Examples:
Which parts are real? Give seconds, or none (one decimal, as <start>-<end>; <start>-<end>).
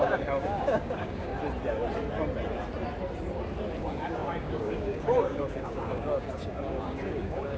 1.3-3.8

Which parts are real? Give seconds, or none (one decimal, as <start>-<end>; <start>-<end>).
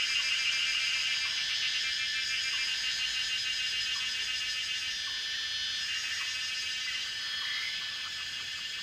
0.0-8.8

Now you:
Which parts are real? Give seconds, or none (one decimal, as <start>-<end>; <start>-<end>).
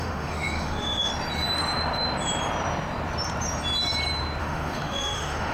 1.1-4.4